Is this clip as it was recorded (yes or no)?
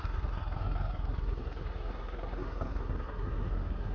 no